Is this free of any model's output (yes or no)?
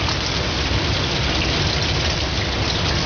no